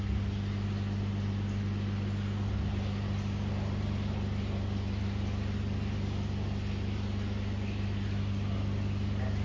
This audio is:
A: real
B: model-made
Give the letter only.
A